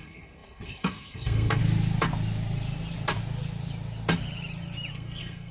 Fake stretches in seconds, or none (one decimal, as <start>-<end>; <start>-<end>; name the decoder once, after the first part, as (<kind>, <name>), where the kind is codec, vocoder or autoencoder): 0.0-1.6 (codec, SNAC); 4.9-5.5

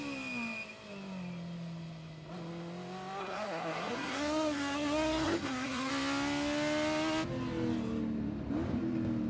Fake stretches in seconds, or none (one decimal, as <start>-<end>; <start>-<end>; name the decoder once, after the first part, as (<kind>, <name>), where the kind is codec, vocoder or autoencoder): 3.2-5.9 (codec, SNAC)

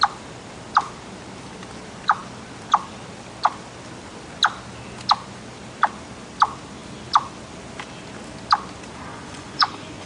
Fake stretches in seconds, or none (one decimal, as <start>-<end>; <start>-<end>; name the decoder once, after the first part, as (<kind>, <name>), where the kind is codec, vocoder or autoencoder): 9.1-10.1 (vocoder, Vocos)

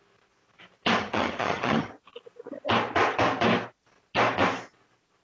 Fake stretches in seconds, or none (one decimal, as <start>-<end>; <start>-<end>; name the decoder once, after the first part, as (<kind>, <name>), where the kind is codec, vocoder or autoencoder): 1.0-1.9 (vocoder, HiFi-GAN)

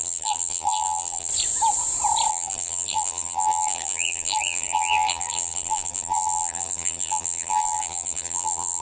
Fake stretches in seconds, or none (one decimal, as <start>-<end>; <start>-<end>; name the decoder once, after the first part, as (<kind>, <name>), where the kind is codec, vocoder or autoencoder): 0.0-1.3 (vocoder, BigVGAN v2); 2.3-8.8